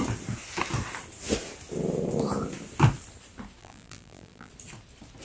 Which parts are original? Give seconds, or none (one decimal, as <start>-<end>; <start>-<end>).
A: 0.0-3.6; 4.5-5.2